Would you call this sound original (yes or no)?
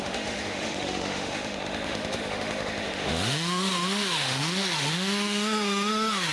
no